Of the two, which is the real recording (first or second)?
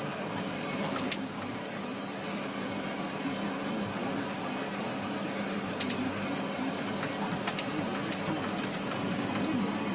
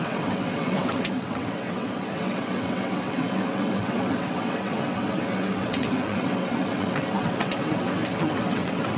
first